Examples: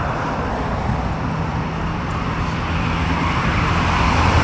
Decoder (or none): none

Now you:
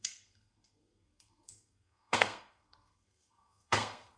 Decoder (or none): codec, SNAC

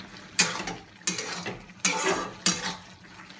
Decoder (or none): none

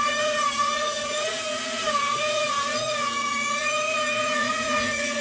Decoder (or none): vocoder, Vocos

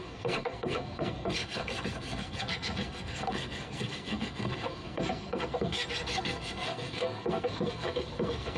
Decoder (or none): codec, SNAC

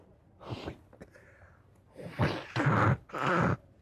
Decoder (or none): none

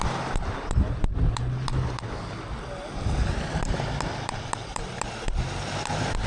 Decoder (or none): none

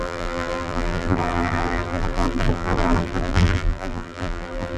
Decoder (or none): vocoder, BigVGAN v2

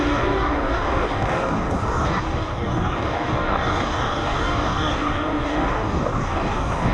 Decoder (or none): codec, DAC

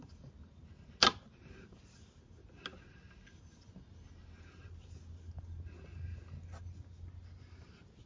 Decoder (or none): none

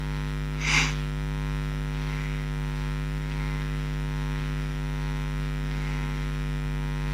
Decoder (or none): none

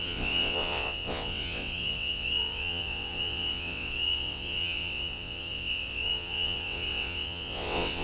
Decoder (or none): vocoder, WaveNeXt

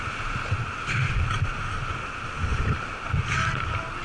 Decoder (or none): none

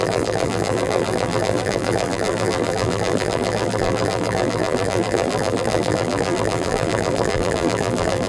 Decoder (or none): vocoder, BigVGAN v2